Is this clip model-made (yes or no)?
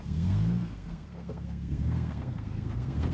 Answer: yes